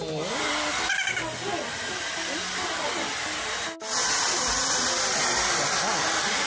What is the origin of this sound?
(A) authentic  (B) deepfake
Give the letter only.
A